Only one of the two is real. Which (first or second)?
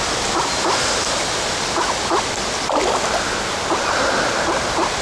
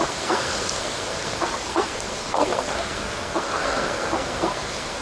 first